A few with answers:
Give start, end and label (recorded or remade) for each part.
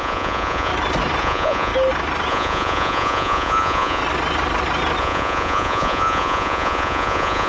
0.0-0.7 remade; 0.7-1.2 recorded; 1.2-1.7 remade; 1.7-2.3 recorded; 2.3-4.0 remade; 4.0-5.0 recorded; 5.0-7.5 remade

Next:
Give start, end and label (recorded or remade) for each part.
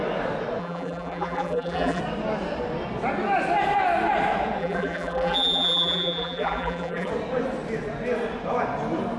0.0-0.6 recorded; 0.6-2.0 remade; 2.0-4.6 recorded; 4.6-7.1 remade; 7.1-9.2 recorded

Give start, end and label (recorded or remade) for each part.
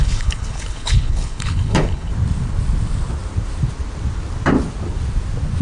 0.0-2.1 remade; 2.1-5.6 recorded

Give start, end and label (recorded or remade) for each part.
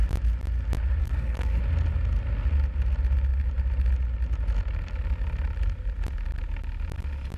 0.0-1.0 recorded; 1.0-1.6 remade; 1.6-7.4 recorded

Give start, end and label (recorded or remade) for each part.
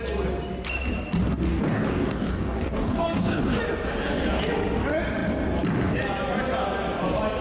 0.0-1.5 recorded; 1.5-3.6 remade; 3.6-7.4 recorded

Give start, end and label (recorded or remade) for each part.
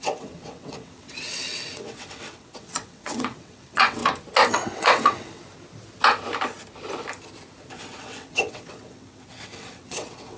0.0-4.0 remade; 4.0-4.5 recorded; 4.5-5.4 remade; 5.4-8.0 recorded; 8.0-10.4 remade